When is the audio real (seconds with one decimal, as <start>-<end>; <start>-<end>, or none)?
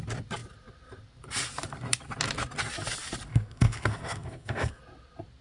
0.0-3.3; 4.8-5.4